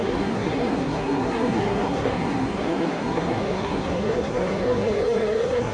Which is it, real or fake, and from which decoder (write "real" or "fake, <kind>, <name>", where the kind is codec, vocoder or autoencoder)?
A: fake, codec, SNAC